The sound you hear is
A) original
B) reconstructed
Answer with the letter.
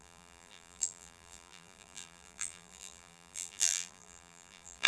B